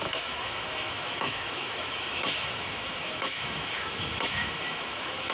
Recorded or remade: remade